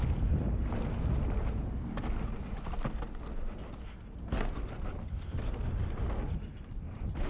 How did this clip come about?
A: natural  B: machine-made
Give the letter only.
A